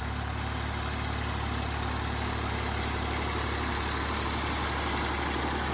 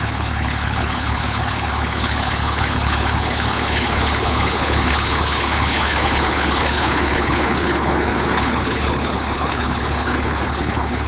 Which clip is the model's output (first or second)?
second